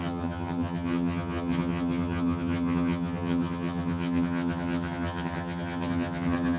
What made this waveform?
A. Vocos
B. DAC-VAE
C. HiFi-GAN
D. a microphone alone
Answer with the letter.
C